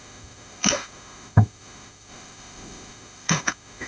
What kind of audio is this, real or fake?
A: fake